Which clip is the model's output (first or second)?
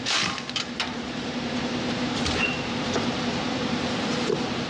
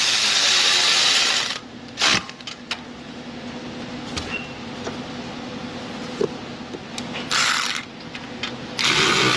first